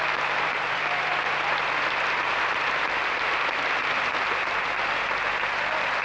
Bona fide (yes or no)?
yes